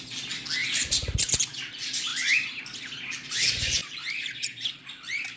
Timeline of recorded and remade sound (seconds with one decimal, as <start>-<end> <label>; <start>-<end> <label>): 0.0-0.6 recorded; 0.6-1.4 remade; 1.4-3.8 recorded; 3.8-5.4 remade